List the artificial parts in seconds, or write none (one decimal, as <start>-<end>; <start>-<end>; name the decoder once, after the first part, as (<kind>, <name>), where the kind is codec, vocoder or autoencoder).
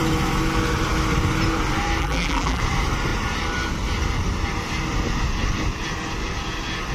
2.0-2.6 (vocoder, BigVGAN v2)